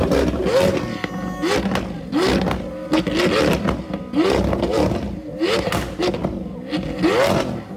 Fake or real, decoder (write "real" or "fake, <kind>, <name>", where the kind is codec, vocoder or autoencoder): real